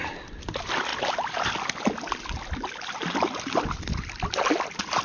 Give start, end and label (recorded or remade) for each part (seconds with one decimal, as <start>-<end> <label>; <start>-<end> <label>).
0.0-5.0 recorded